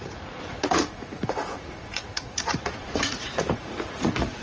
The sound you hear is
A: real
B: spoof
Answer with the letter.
B